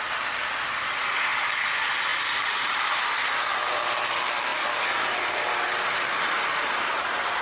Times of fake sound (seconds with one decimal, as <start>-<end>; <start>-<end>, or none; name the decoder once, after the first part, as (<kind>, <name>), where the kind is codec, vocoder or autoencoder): 2.1-3.0 (vocoder, BigVGAN v2)